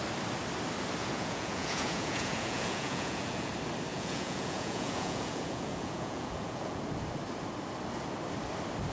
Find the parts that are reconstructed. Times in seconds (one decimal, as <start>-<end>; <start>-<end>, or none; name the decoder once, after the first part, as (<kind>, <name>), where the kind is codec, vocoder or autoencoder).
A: 1.0-3.5 (vocoder, Vocos); 3.9-6.8